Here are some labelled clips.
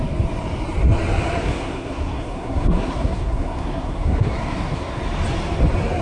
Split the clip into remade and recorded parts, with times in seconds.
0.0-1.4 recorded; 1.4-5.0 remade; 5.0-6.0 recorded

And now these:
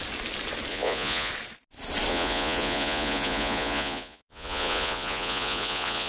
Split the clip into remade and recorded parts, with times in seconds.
0.0-0.7 recorded; 0.7-1.3 remade; 1.3-2.1 recorded; 2.1-6.1 remade

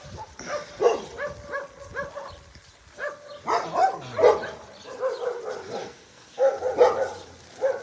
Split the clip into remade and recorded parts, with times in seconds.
0.0-5.8 recorded; 5.8-6.6 remade; 6.6-7.8 recorded

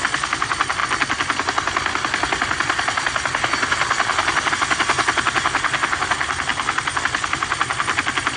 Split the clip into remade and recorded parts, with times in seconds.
0.0-8.4 recorded

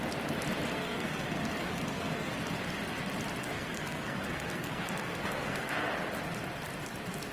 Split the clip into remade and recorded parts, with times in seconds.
0.0-0.7 recorded; 0.7-2.3 remade; 2.3-3.4 recorded; 3.4-5.9 remade; 5.9-7.3 recorded

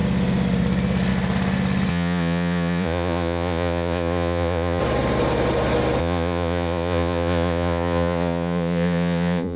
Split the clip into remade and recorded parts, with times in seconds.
0.0-1.9 recorded; 1.9-4.8 remade; 4.8-6.0 recorded; 6.0-9.6 remade

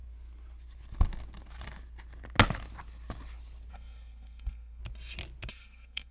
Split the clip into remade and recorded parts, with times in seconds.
0.0-3.7 recorded; 3.7-4.8 remade; 4.8-5.5 recorded; 5.5-6.1 remade

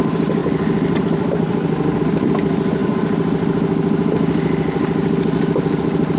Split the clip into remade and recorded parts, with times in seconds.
0.0-6.2 recorded